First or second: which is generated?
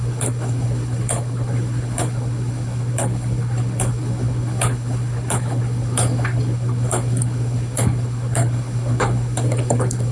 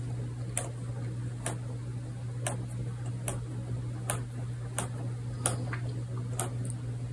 first